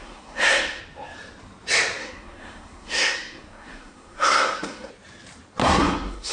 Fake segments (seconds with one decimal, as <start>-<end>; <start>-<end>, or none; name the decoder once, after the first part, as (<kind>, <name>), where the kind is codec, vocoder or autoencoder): 0.0-0.8 (codec, SNAC); 2.0-4.9; 5.6-6.3